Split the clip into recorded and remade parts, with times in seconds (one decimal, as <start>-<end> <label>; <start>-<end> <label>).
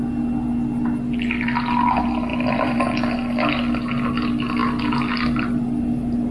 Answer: 0.0-2.3 recorded; 2.3-2.8 remade; 2.8-6.3 recorded